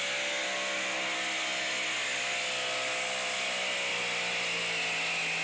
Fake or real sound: real